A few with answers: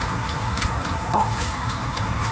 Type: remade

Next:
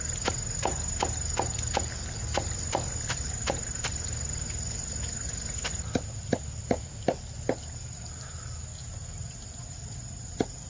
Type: recorded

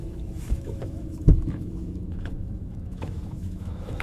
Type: remade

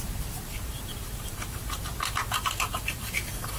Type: remade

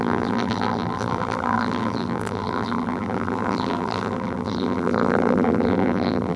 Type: remade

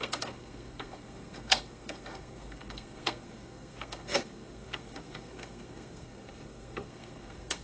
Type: remade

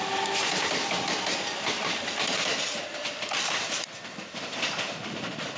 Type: recorded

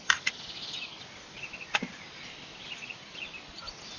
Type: recorded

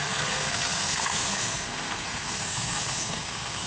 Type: remade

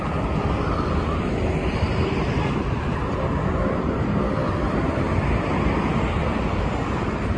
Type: recorded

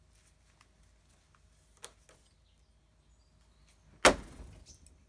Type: recorded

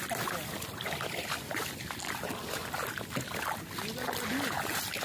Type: recorded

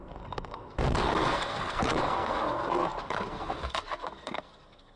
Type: remade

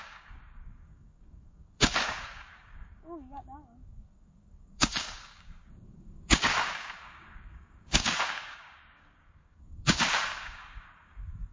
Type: remade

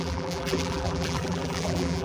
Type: remade